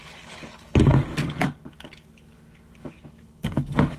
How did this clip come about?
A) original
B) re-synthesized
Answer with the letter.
B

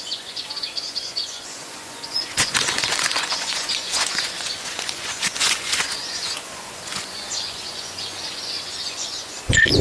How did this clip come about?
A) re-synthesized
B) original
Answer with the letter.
A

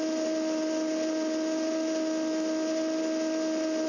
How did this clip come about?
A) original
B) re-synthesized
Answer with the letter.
A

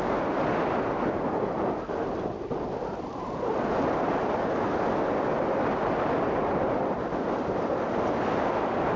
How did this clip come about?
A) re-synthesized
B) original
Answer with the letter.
B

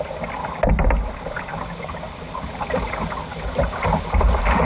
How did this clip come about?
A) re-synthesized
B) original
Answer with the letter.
B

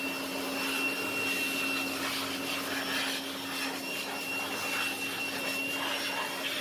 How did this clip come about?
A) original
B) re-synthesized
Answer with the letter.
A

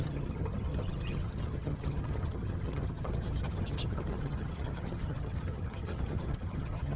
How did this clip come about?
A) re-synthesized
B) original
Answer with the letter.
A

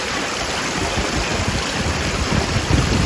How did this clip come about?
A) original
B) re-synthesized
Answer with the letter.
A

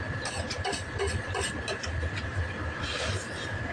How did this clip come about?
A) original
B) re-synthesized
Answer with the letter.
A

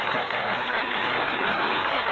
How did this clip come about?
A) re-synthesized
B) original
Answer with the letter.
A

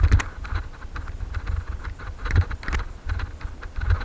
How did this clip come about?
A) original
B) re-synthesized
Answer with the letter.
A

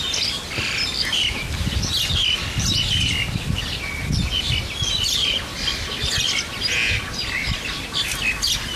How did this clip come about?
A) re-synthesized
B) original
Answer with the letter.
B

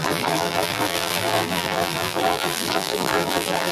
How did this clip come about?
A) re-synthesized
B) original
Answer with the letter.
A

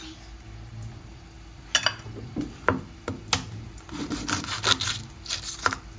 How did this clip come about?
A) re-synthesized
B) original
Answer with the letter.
B